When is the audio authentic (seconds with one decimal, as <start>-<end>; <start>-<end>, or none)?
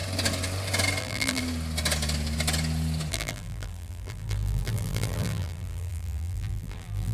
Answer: 0.0-1.0; 1.4-3.1